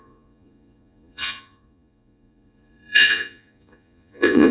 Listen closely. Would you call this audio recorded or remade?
remade